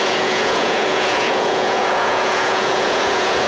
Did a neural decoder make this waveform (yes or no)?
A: yes